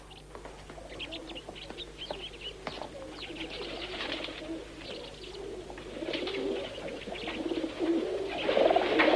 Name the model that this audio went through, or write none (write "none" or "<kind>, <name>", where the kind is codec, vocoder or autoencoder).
none